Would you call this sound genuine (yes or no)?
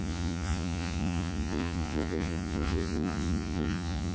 no